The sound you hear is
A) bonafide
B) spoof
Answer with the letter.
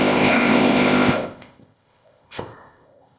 B